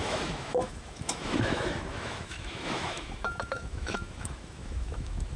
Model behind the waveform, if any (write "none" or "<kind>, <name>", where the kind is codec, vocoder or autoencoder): autoencoder, DAC-VAE